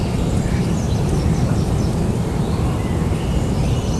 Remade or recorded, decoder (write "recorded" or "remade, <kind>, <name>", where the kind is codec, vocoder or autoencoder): recorded